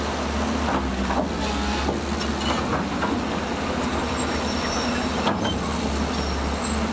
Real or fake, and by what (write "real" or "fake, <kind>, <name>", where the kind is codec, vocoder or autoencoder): real